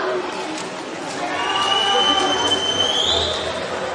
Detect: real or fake real